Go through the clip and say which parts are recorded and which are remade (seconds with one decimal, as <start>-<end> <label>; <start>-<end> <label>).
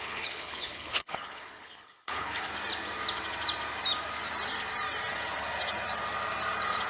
0.0-2.5 remade; 2.5-6.9 recorded